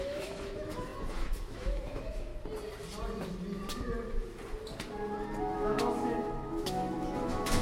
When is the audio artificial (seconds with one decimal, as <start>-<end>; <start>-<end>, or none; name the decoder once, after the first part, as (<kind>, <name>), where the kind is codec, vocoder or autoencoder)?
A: 0.0-2.3 (autoencoder, DAC-VAE); 5.4-7.6